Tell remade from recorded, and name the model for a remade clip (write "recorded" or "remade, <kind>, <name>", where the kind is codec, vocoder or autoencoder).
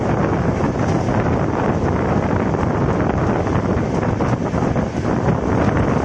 recorded